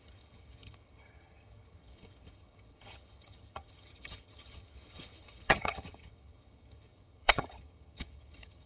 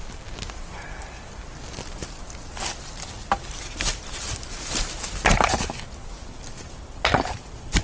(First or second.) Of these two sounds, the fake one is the first